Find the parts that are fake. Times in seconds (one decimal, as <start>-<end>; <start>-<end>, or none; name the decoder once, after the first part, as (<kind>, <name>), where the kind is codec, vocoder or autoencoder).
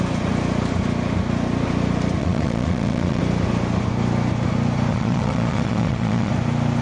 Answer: 2.2-3.2 (vocoder, Vocos); 4.9-6.3